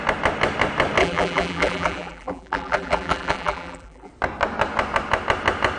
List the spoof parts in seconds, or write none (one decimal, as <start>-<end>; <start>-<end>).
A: 1.0-4.1